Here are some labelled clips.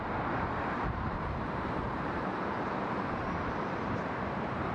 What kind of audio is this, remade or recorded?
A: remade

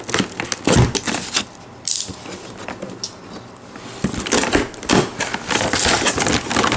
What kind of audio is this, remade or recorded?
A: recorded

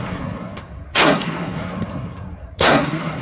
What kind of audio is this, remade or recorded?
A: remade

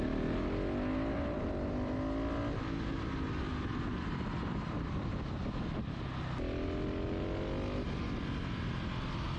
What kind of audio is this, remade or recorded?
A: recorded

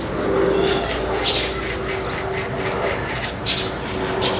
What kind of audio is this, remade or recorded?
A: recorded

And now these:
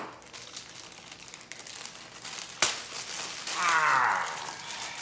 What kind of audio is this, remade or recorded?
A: recorded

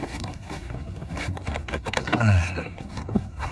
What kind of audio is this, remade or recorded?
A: remade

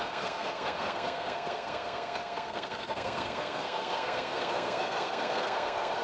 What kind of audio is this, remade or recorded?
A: remade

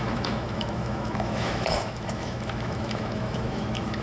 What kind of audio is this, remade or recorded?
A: remade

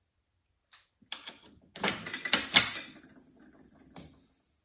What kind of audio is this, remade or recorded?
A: recorded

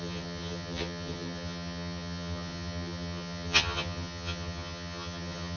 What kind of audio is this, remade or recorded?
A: remade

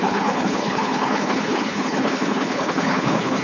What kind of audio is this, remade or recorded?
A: remade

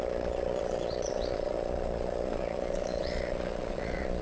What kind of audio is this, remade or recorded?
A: remade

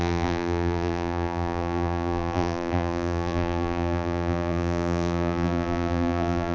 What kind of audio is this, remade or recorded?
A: remade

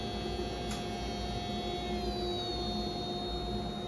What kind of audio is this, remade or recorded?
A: recorded